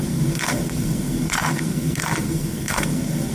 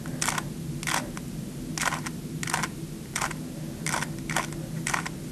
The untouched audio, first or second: second